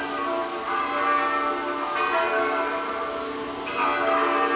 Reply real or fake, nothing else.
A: real